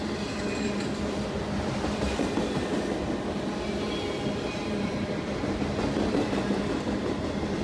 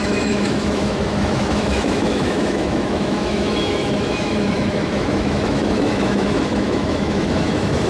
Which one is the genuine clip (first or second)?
first